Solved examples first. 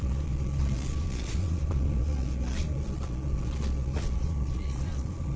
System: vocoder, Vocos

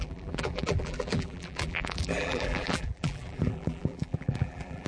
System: vocoder, BigVGAN v2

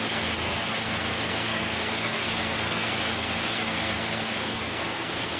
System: codec, SNAC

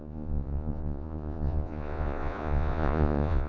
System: vocoder, Vocos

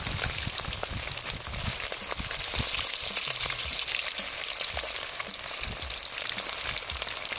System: none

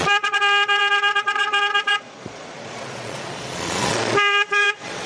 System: vocoder, Vocos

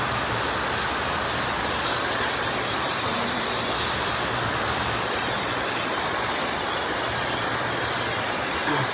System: none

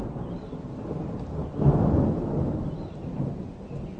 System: none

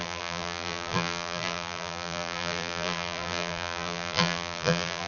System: vocoder, BigVGAN v2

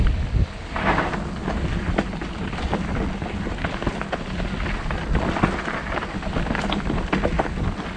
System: none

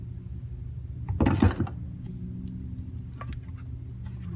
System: none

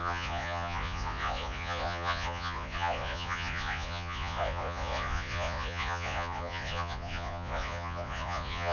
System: vocoder, Vocos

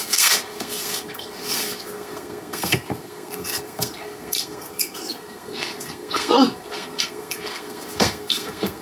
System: codec, SNAC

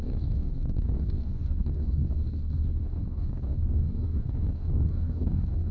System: codec, DAC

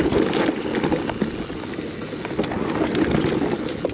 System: none